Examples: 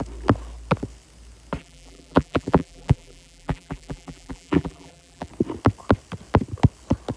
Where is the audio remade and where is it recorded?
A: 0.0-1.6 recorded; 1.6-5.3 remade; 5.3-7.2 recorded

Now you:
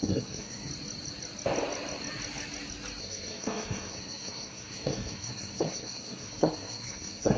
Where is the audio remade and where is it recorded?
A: 0.0-0.7 remade; 0.7-3.0 recorded; 3.0-7.4 remade

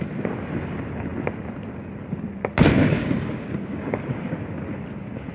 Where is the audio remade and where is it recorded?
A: 0.0-2.8 recorded; 2.8-4.4 remade; 4.4-5.3 recorded

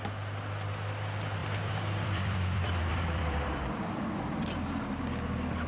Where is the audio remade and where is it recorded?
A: 0.0-1.4 recorded; 1.4-4.8 remade; 4.8-5.7 recorded

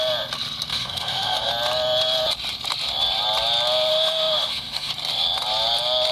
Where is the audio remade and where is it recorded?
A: 0.0-0.7 recorded; 0.7-1.5 remade; 1.5-3.9 recorded; 3.9-4.9 remade; 4.9-6.1 recorded

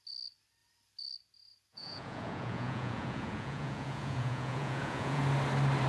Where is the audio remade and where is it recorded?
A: 0.0-1.7 recorded; 1.7-5.2 remade; 5.2-5.9 recorded

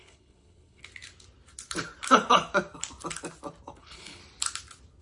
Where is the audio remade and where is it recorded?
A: 0.0-0.8 remade; 0.8-3.8 recorded; 3.8-4.2 remade; 4.2-5.0 recorded